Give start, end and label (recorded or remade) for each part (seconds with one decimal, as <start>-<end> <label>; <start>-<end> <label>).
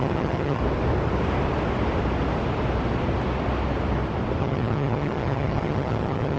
0.0-0.6 remade; 0.6-4.4 recorded; 4.4-6.4 remade